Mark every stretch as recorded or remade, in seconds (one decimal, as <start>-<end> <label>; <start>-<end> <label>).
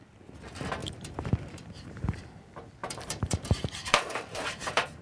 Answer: 0.0-0.8 recorded; 0.8-2.4 remade; 2.4-2.8 recorded; 2.8-5.0 remade